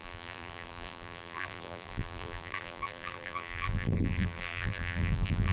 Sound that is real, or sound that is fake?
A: fake